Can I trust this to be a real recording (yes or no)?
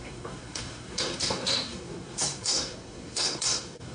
no